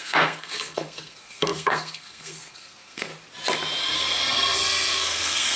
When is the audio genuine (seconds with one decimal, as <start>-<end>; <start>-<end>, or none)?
3.1-3.8